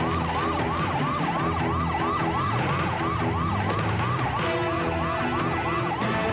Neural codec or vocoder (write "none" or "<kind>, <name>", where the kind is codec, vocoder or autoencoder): none